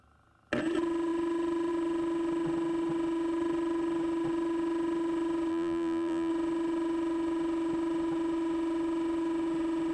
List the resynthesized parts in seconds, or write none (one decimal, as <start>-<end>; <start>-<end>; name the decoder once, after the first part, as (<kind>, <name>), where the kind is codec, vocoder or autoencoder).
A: 5.5-6.3 (vocoder, BigVGAN v2)